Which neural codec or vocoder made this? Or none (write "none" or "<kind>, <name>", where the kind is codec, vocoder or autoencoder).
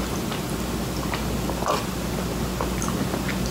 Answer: none